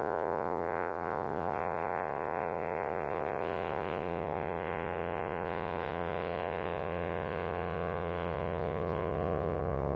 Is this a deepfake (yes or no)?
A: yes